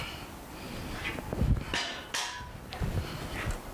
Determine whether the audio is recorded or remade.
recorded